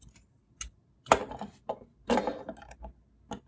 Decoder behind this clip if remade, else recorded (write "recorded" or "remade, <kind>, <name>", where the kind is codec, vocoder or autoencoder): recorded